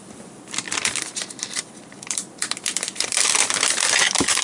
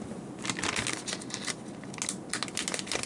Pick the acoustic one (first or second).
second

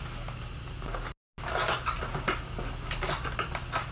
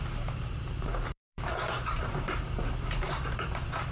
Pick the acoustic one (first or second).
first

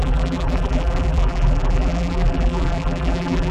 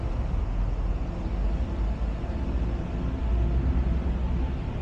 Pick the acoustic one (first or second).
second